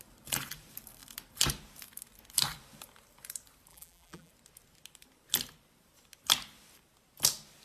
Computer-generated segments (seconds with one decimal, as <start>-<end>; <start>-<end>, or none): 3.7-4.3